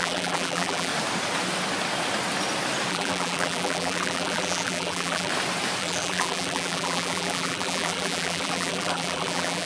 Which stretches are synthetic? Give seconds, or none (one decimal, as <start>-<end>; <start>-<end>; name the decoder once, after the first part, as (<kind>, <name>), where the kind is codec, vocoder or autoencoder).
0.0-0.9 (vocoder, BigVGAN v2); 2.9-5.3; 5.8-9.7